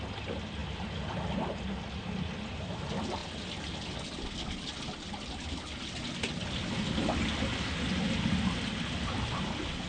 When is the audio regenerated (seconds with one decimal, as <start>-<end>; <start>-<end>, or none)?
none